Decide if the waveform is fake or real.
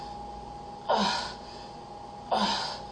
real